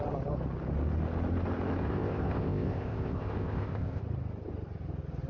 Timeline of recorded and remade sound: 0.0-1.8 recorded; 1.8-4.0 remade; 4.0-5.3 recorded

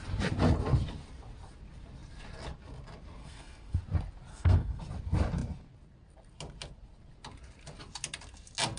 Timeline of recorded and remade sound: 0.0-3.2 recorded; 3.2-3.8 remade; 3.8-4.3 recorded; 4.3-4.8 remade; 4.8-8.8 recorded

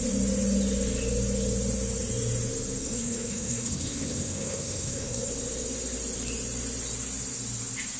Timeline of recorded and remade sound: 0.0-2.8 recorded; 2.8-5.3 remade; 5.3-8.0 recorded

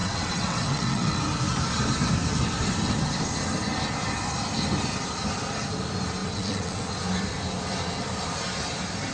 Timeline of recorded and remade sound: 0.0-1.2 remade; 1.2-6.2 recorded; 6.2-6.9 remade; 6.9-9.1 recorded

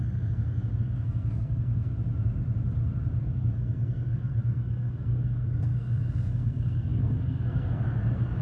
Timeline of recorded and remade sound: 0.0-1.9 remade; 1.9-3.2 recorded; 3.2-8.4 remade